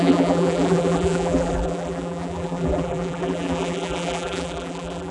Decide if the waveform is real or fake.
fake